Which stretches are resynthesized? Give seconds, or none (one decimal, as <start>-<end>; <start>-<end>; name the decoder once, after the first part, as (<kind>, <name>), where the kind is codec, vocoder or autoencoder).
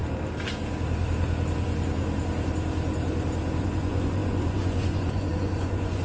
3.6-6.0 (vocoder, Vocos)